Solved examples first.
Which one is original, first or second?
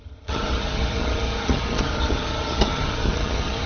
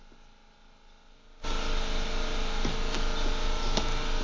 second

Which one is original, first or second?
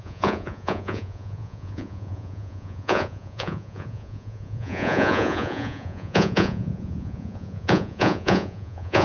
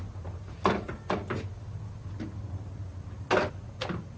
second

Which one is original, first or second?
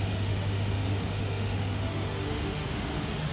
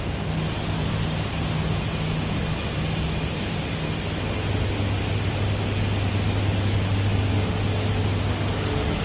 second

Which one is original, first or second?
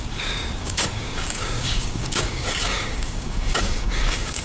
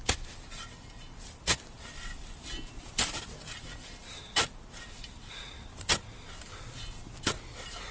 second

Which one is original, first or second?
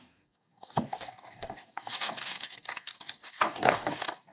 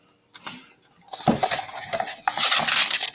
second